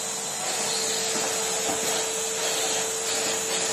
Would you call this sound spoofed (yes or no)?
no